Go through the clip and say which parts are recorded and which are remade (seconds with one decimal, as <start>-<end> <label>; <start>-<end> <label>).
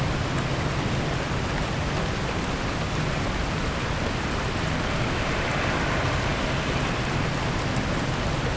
0.0-8.6 recorded